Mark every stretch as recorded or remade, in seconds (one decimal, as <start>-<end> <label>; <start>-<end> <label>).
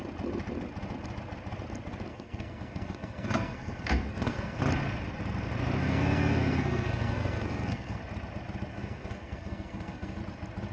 0.0-2.1 recorded; 2.1-4.6 remade; 4.6-5.8 recorded; 5.8-8.0 remade; 8.0-8.7 recorded; 8.7-10.2 remade; 10.2-10.7 recorded